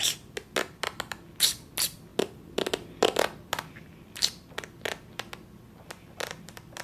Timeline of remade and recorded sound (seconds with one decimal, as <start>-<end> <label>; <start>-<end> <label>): 0.0-6.8 recorded